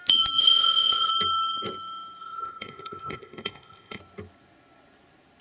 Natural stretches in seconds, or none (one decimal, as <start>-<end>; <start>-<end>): 0.0-0.4; 1.1-2.2; 4.0-5.4